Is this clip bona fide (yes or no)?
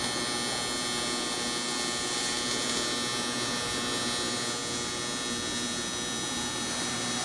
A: yes